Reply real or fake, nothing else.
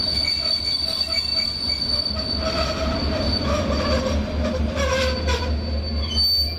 real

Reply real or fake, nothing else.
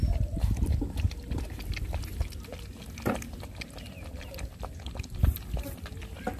real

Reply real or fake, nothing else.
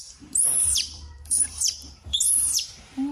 fake